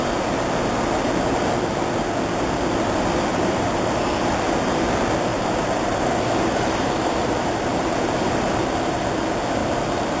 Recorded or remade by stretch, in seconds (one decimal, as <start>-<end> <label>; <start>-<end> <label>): 0.0-3.3 recorded; 3.3-4.0 remade; 4.0-5.3 recorded; 5.3-8.6 remade; 8.6-9.6 recorded; 9.6-10.2 remade